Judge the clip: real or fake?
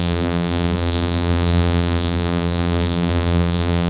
fake